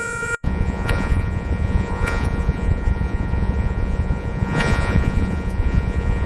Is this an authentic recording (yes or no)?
no